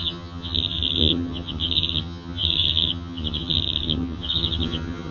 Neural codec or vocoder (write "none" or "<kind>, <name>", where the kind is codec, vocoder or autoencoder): vocoder, HiFi-GAN